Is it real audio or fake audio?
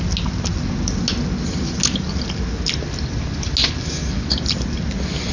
real